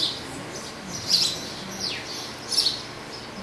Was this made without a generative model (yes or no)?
yes